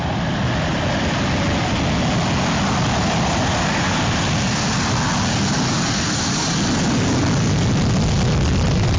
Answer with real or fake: real